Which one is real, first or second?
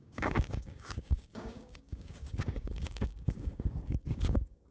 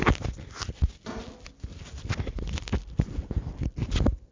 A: second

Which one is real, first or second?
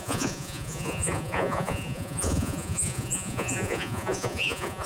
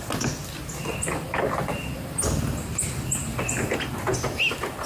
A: second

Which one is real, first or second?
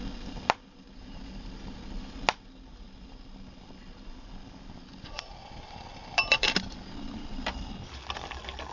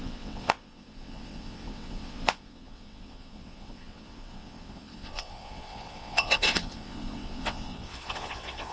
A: first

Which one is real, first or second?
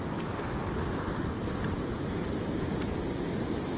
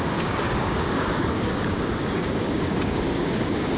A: first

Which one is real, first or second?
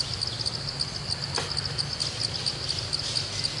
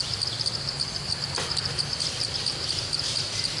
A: first